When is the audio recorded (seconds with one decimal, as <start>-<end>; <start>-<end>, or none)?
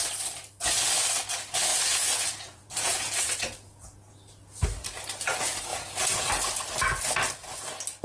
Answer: 0.0-1.7; 4.1-5.7; 6.3-8.0